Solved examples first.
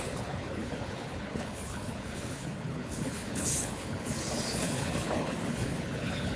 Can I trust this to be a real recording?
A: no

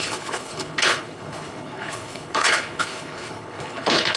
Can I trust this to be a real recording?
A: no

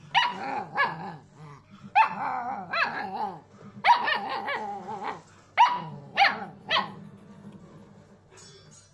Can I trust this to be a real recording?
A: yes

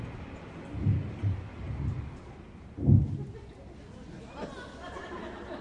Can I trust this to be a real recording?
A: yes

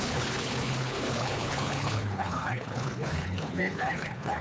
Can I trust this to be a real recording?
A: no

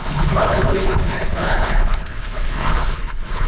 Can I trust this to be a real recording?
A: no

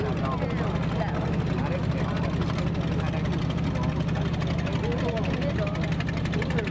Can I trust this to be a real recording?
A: yes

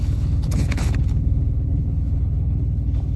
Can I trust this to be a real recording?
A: no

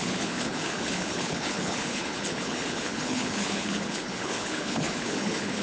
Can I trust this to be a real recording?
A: no